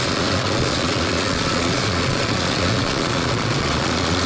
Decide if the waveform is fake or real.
fake